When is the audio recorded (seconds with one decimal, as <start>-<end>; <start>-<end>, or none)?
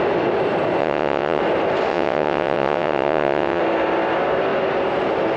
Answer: 0.0-0.8; 1.4-1.9; 3.6-5.4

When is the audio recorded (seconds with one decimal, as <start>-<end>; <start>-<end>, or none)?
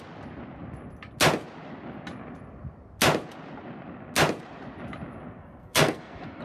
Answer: 0.0-5.4